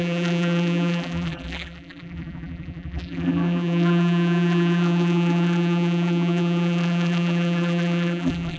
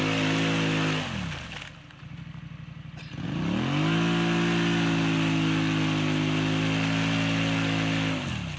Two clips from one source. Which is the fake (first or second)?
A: first